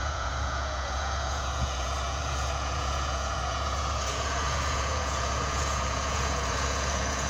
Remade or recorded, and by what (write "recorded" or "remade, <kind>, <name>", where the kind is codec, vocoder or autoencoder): remade, vocoder, Vocos